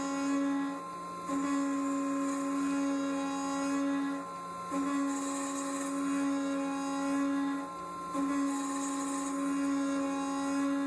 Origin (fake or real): real